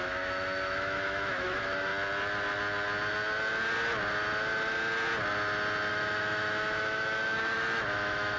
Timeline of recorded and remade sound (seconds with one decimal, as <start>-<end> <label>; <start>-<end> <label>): 0.0-1.9 remade; 1.9-5.9 recorded; 5.9-8.4 remade